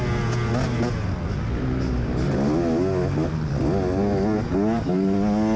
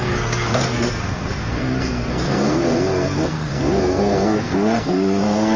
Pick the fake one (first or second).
second